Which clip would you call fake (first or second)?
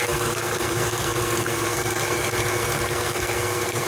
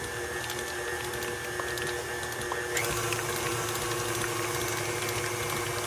first